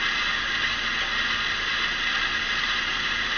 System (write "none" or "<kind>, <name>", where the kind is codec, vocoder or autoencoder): none